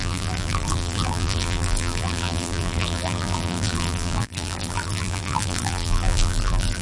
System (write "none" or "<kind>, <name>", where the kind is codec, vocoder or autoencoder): vocoder, BigVGAN v2